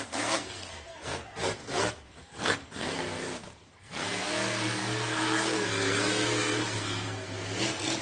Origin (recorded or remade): remade